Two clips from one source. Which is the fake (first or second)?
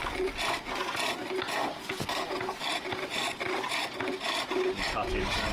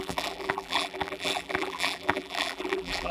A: second